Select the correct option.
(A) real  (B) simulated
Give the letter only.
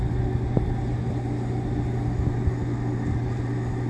A